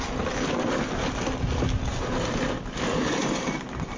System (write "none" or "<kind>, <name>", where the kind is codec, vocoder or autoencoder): none